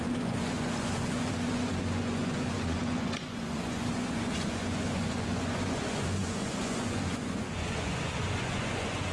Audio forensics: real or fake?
fake